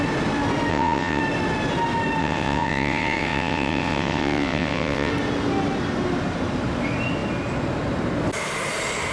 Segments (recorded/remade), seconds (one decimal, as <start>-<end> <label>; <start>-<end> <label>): 0.0-0.7 recorded; 0.7-1.2 remade; 1.2-2.2 recorded; 2.2-5.1 remade; 5.1-9.1 recorded